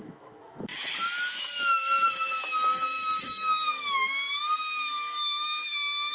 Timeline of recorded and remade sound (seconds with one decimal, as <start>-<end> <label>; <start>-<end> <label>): 0.0-6.1 remade